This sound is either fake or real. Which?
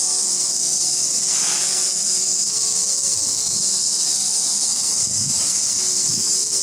fake